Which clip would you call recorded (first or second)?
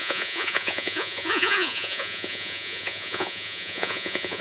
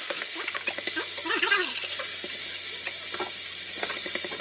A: second